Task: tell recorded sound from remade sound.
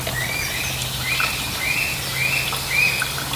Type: recorded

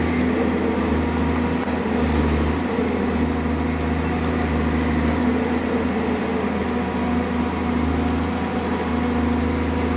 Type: recorded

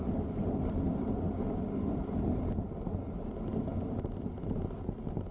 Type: recorded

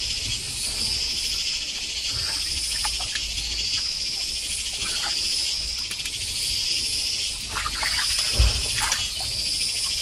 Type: recorded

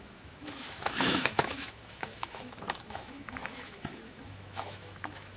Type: remade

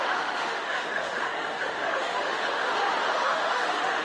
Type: remade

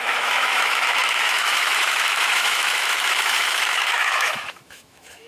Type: remade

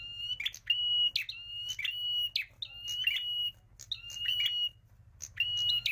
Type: recorded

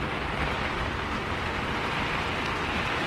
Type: recorded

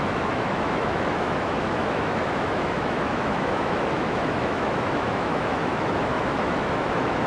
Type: remade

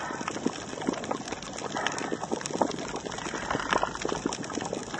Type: recorded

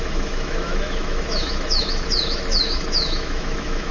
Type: remade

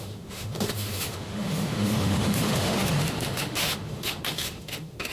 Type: remade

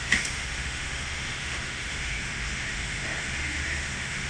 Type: remade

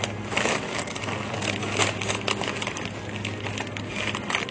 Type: recorded